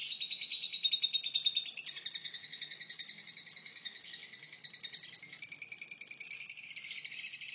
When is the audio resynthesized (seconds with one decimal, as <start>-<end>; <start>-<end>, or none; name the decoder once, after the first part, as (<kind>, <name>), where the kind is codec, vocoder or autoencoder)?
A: 2.2-4.1 (codec, DAC)